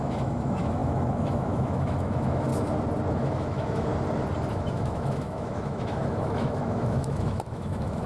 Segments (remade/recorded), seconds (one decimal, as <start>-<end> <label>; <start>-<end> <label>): 0.0-2.5 remade; 2.5-3.1 recorded; 3.1-3.9 remade; 3.9-4.5 recorded; 4.5-8.1 remade